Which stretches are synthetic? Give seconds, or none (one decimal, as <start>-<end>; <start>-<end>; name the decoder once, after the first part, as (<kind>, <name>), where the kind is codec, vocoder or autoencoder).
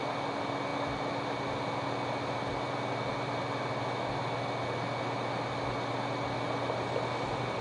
none